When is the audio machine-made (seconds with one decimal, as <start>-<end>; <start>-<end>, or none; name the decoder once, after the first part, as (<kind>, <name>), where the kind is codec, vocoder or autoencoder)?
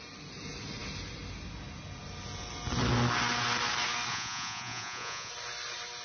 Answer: 4.1-5.3 (vocoder, Vocos)